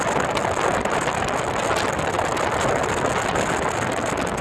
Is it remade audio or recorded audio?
recorded